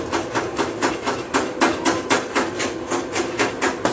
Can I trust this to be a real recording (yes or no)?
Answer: yes